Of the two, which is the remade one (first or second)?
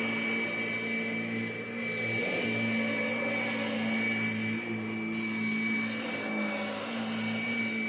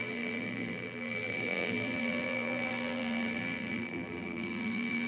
second